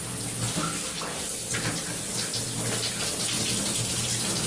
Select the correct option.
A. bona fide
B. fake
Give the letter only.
A